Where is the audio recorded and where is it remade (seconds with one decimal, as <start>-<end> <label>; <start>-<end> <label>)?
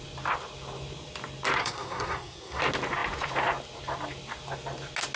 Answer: 0.0-1.6 recorded; 1.6-2.6 remade; 2.6-5.2 recorded